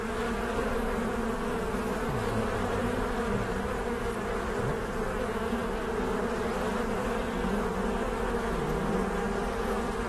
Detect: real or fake real